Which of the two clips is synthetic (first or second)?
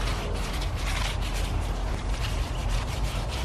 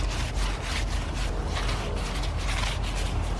first